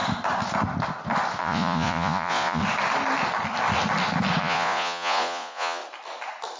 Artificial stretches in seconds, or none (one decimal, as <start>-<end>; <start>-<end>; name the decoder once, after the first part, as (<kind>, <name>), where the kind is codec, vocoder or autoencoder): 1.4-2.6 (vocoder, Vocos); 4.4-5.8